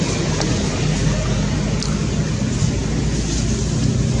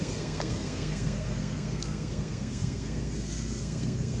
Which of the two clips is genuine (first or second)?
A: first